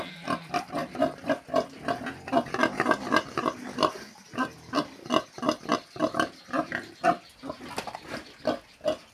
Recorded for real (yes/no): yes